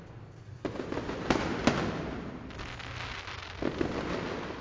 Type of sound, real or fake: real